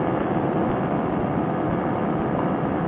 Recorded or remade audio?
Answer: recorded